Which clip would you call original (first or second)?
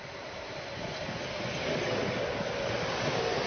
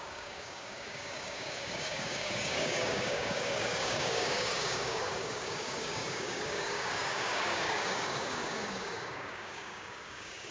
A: first